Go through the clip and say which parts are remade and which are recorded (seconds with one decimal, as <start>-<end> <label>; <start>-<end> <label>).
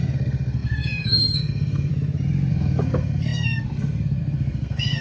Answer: 0.0-1.9 remade; 1.9-2.5 recorded; 2.5-5.0 remade